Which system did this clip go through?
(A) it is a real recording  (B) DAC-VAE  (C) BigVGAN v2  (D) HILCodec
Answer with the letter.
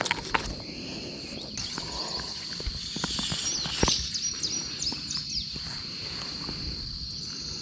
A